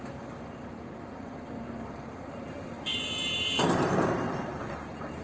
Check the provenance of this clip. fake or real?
fake